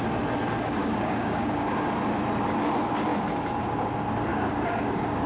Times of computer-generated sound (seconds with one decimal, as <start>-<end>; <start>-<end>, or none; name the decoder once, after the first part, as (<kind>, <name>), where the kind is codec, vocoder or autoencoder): 0.8-1.7 (codec, DAC); 4.3-5.3